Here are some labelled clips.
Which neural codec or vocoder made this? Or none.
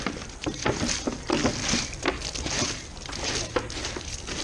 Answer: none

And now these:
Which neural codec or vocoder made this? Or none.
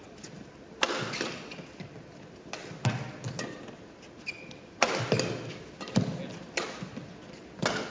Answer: none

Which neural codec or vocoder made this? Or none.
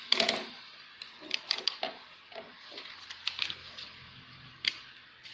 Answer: none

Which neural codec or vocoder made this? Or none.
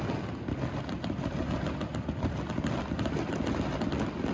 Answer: none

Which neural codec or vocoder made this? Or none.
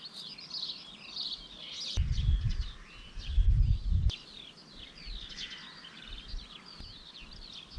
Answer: none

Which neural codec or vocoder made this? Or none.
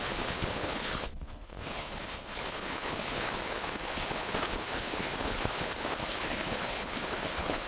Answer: codec, HILCodec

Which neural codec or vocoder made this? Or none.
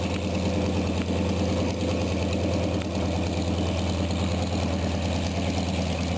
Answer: none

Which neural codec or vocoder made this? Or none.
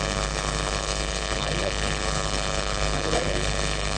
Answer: codec, HILCodec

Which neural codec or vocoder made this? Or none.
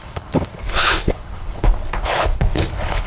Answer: codec, HILCodec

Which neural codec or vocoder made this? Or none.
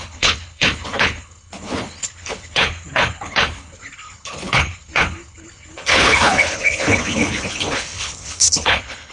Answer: codec, HILCodec